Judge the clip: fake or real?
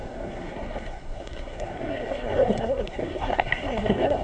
fake